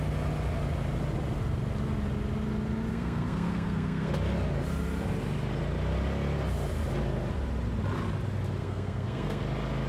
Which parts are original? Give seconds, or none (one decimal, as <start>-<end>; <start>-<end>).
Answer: 0.0-2.9; 4.1-8.6; 9.4-9.9